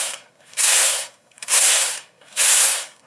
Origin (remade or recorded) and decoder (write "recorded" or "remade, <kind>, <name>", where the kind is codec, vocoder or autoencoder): remade, codec, SNAC